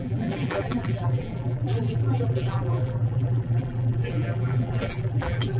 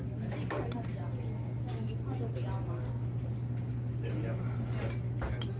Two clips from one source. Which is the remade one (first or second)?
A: first